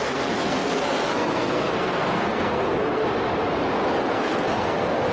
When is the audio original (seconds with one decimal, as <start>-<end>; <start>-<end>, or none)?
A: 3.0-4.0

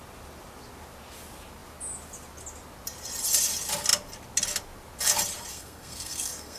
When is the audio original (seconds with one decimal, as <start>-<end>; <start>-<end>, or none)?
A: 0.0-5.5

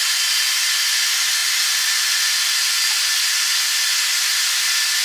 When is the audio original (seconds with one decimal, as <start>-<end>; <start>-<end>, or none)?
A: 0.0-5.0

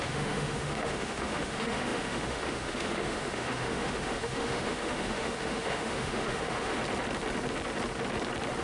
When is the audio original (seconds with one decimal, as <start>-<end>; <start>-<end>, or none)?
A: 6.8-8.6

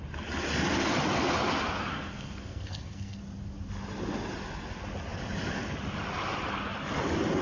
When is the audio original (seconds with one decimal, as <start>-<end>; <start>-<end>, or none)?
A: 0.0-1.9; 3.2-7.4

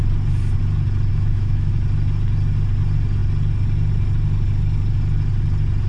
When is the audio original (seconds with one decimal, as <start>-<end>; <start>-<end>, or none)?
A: 0.0-1.1; 1.7-5.9

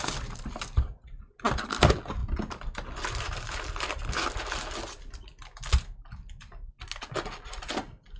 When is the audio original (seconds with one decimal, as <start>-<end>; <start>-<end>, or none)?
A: 0.0-8.2